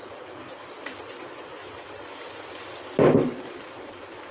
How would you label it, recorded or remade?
recorded